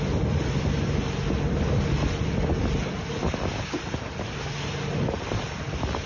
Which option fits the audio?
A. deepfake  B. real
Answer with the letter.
B